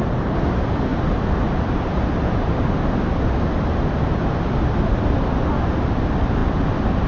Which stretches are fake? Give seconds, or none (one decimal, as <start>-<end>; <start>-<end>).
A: none